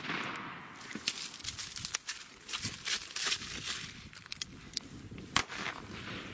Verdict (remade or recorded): recorded